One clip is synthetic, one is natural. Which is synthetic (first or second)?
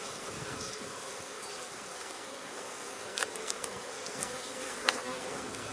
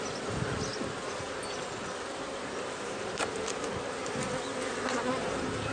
first